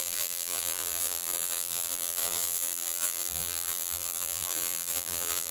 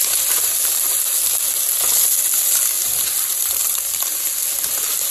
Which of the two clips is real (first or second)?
second